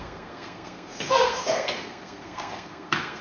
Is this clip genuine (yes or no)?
no